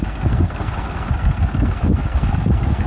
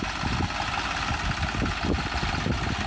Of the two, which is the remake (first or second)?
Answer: first